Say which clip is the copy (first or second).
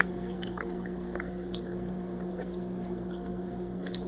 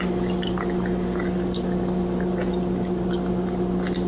first